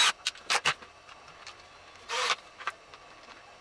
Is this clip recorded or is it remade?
recorded